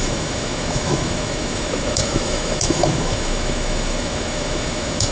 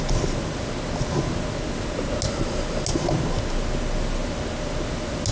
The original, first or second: second